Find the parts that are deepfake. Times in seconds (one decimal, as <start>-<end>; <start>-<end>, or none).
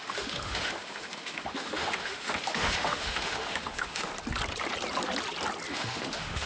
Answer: 0.0-4.1; 5.7-6.5